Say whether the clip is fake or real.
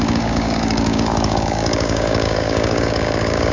fake